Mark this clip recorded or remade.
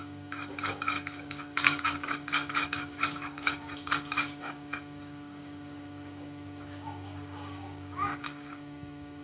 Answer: remade